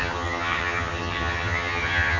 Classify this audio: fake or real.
fake